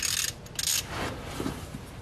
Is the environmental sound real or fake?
real